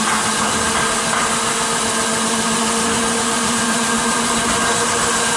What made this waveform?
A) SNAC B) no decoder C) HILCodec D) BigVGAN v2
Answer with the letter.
B